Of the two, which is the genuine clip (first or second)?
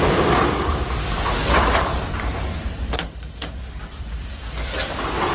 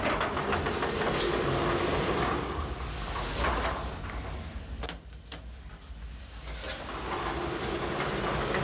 second